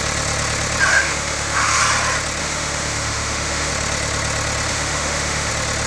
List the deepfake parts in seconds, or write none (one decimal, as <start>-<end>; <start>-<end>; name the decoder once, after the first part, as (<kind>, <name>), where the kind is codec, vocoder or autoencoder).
0.9-1.8 (autoencoder, DAC-VAE); 2.4-3.7; 4.7-5.5